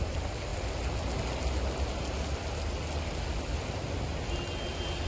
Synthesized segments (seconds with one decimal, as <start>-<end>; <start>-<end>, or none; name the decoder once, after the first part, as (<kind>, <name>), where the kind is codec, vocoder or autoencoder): none